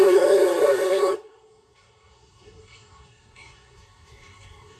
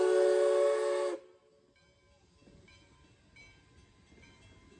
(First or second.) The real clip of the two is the second